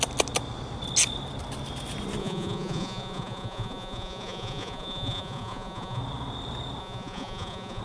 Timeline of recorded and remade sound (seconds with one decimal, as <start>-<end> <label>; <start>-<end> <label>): 0.0-2.2 recorded; 2.2-6.0 remade; 6.0-6.8 recorded; 6.8-7.8 remade